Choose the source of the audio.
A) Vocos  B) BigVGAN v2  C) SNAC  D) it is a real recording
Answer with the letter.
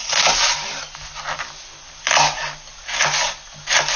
D